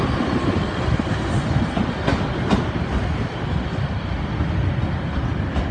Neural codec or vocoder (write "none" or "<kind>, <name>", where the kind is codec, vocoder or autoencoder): none